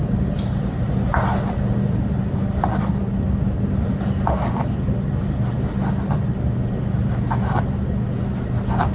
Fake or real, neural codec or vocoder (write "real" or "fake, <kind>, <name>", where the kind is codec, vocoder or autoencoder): real